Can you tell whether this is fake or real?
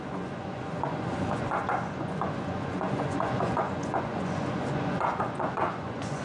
fake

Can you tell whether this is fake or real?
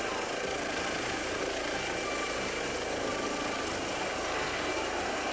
real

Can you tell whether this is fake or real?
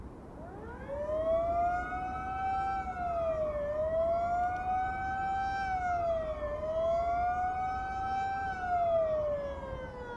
real